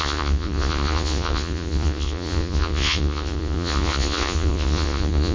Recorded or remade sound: remade